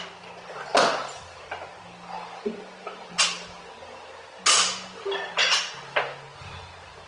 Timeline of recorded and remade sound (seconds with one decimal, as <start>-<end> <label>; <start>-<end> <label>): 0.0-7.1 recorded